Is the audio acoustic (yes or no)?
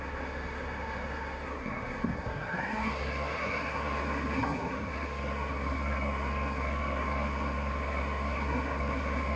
no